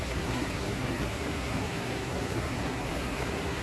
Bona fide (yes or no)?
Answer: no